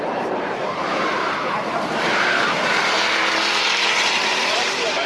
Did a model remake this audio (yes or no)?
yes